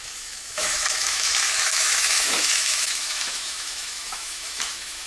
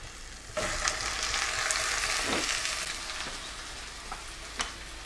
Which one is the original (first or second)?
second